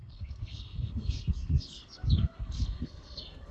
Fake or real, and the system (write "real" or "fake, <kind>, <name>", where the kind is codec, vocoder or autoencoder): fake, codec, SNAC